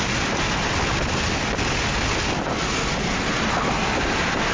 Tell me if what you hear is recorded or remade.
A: recorded